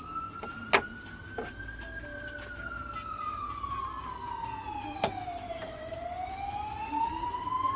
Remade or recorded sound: recorded